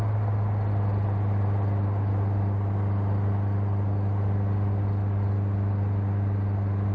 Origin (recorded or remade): recorded